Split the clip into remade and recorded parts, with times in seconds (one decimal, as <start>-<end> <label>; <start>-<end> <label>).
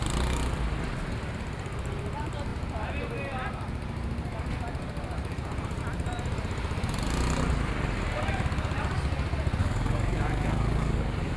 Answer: 0.0-9.6 recorded; 9.6-11.4 remade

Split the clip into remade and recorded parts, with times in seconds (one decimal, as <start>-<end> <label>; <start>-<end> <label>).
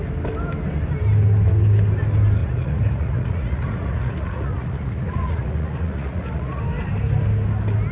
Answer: 0.0-2.4 recorded; 2.4-6.6 remade; 6.6-7.9 recorded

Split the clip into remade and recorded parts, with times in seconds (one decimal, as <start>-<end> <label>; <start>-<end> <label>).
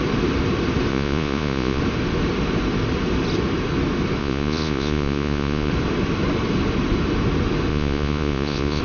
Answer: 0.0-0.9 recorded; 0.9-1.8 remade; 1.8-4.2 recorded; 4.2-5.7 remade; 5.7-7.7 recorded; 7.7-8.8 remade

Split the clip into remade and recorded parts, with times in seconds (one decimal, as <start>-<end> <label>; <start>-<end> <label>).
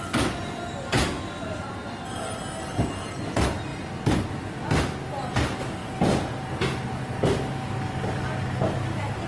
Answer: 0.0-5.8 recorded; 5.8-6.6 remade; 6.6-9.3 recorded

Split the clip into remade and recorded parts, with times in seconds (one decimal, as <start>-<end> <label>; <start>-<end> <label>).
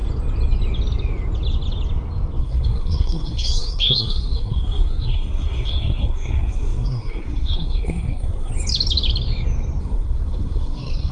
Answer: 0.0-2.4 recorded; 2.4-8.5 remade; 8.5-9.8 recorded; 9.8-11.1 remade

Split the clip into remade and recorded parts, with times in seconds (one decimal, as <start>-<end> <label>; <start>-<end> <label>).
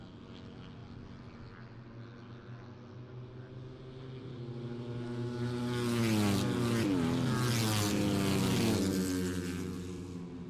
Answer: 0.0-10.5 recorded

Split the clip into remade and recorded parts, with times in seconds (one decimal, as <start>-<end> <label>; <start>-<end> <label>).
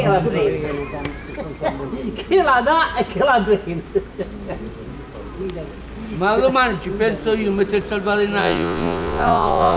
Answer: 0.0-8.4 recorded; 8.4-9.8 remade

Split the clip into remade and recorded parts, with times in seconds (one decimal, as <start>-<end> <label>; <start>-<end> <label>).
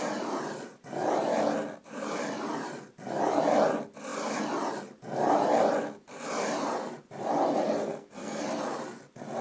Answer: 0.0-7.9 recorded; 7.9-8.4 remade; 8.4-9.4 recorded